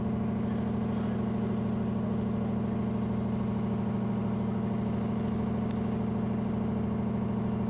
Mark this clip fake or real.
real